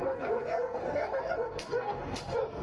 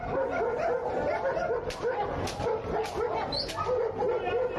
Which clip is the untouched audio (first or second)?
second